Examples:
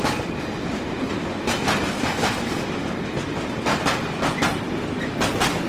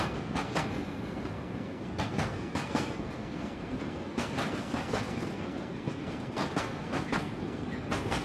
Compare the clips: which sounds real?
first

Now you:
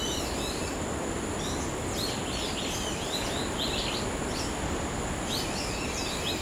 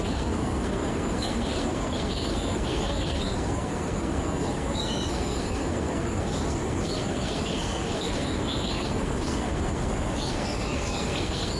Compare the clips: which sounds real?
first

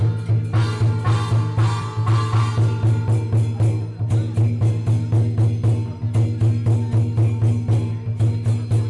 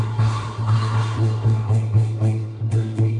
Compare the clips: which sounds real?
first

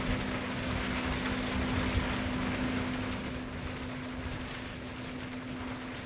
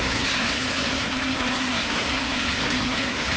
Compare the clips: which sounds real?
first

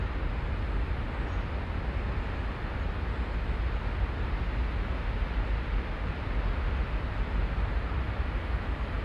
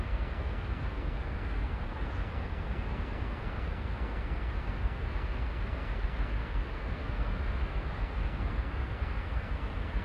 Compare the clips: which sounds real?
first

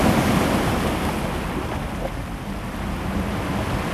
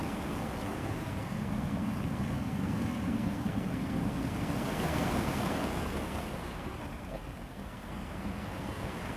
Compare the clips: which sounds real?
first